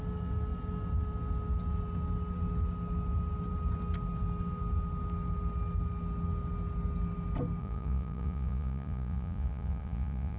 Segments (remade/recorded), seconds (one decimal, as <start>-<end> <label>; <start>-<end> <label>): 0.0-7.6 recorded; 7.6-10.4 remade

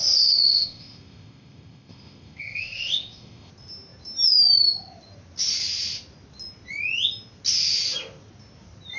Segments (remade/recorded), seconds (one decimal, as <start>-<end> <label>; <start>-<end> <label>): 0.0-3.5 remade; 3.5-9.0 recorded

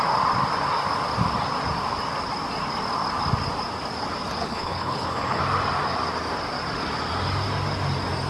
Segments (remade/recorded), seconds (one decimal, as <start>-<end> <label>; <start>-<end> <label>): 0.0-4.4 recorded; 4.4-5.4 remade; 5.4-8.3 recorded

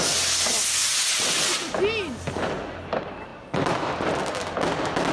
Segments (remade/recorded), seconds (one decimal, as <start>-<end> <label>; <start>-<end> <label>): 0.0-0.8 recorded; 0.8-1.7 remade; 1.7-5.1 recorded

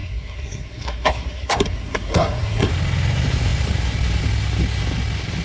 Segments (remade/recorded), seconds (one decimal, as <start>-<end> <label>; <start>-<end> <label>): 0.0-2.7 remade; 2.7-5.4 recorded

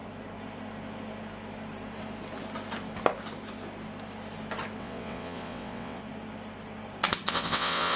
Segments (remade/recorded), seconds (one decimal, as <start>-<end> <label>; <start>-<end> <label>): 0.0-4.8 recorded; 4.8-6.0 remade; 6.0-7.3 recorded; 7.3-8.0 remade